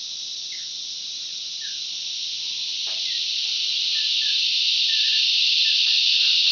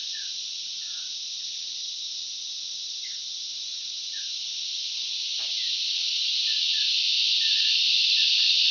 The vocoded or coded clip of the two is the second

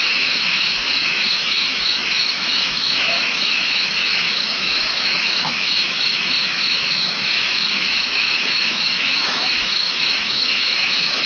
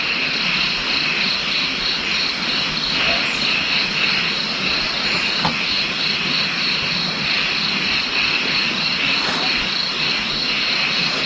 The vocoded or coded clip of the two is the first